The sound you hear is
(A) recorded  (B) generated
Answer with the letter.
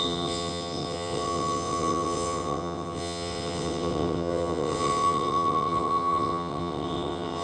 B